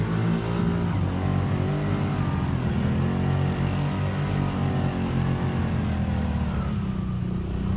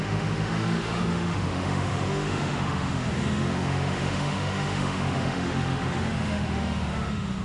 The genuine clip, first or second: first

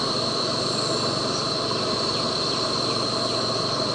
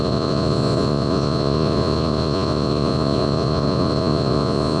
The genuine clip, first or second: first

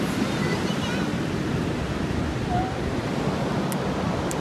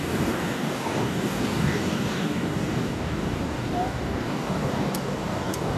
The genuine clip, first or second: first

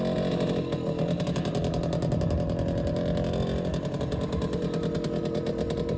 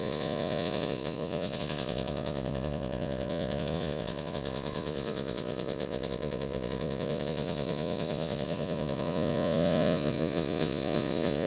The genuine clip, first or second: first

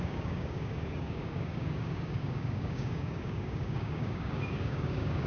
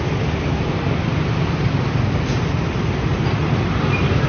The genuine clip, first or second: second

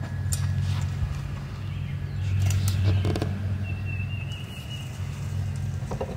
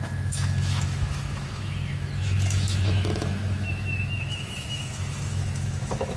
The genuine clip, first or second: first